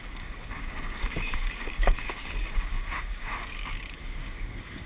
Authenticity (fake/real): fake